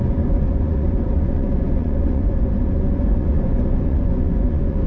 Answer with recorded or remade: remade